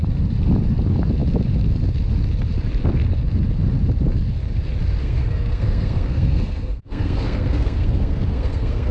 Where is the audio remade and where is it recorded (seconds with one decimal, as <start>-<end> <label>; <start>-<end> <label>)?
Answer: 0.0-5.0 recorded; 5.0-8.9 remade